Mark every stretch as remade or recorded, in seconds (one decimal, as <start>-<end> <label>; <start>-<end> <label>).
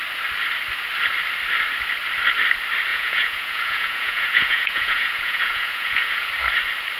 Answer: 0.0-2.9 recorded; 2.9-6.3 remade; 6.3-7.0 recorded